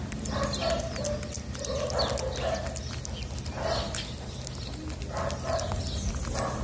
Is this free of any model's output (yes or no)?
yes